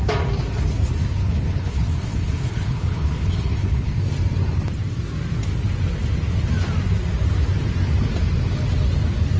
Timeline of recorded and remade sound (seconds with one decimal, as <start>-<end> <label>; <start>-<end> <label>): 0.0-1.2 recorded; 1.2-4.0 remade; 4.0-9.4 recorded